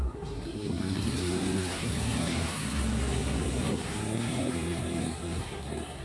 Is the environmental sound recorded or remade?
remade